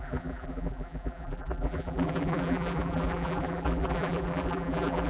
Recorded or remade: remade